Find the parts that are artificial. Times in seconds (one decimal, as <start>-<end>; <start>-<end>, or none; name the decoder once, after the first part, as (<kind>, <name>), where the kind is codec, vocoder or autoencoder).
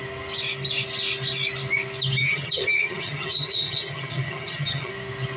2.2-4.9 (vocoder, HiFi-GAN)